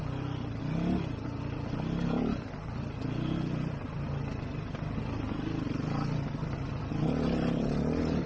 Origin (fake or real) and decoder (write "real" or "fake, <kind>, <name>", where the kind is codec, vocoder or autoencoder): real